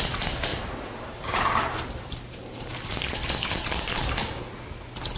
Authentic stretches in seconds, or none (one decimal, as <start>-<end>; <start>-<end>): 0.0-0.5; 2.7-5.2